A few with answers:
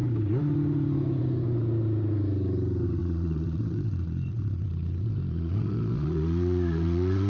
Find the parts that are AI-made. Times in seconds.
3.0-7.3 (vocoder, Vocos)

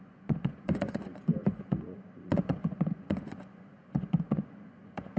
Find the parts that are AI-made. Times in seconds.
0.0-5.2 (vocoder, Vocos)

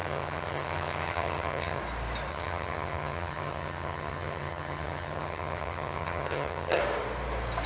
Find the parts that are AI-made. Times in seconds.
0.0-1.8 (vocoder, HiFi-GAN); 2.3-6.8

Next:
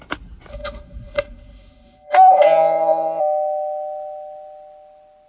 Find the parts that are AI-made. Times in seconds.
0.5-3.2 (codec, SNAC)

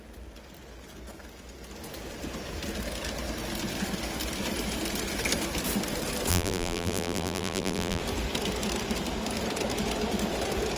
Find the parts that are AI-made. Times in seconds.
6.3-8.0 (vocoder, BigVGAN v2)

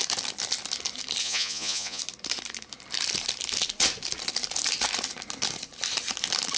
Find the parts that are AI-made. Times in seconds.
1.2-2.0 (vocoder, Vocos)